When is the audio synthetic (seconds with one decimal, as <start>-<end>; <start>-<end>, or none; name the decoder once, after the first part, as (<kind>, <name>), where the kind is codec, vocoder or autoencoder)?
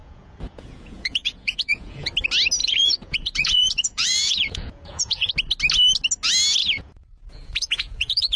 0.0-2.1 (vocoder, Vocos); 2.6-5.3; 6.6-8.4